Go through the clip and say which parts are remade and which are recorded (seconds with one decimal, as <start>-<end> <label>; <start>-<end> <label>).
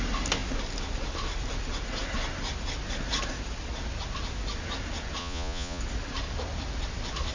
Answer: 0.0-5.2 recorded; 5.2-5.8 remade; 5.8-7.3 recorded